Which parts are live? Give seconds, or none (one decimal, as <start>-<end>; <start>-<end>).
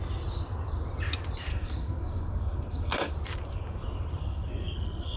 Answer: 0.0-1.5; 3.1-4.2